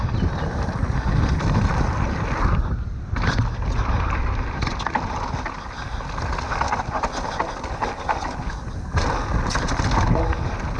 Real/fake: real